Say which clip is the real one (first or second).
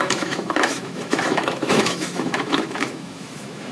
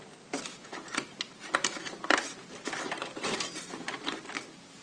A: second